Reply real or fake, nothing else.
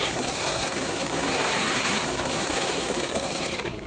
fake